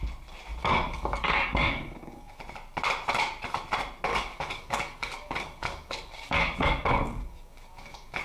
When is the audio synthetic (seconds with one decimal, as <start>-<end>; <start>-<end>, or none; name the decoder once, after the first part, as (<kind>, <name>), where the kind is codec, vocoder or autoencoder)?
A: 0.6-2.4 (codec, DAC); 4.1-8.2